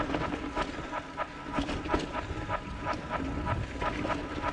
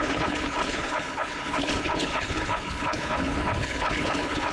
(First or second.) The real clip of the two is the first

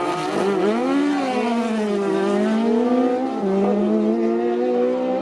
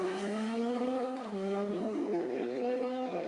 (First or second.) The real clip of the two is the first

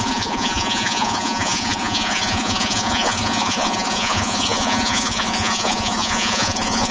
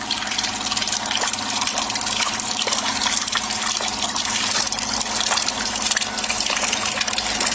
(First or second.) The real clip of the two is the second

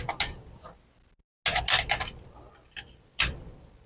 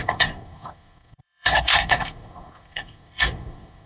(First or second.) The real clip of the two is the first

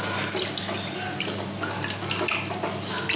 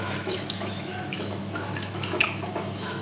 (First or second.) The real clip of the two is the first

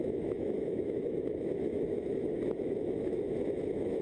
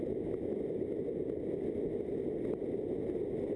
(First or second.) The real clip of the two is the second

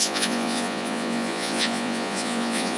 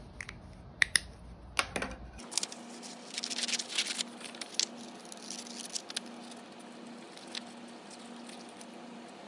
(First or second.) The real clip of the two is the second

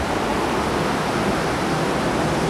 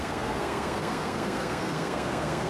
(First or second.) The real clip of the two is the first